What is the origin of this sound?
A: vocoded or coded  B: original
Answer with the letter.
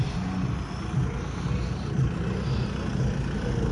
B